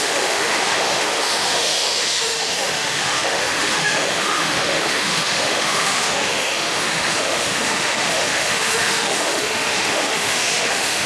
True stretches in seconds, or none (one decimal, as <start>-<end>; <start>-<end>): none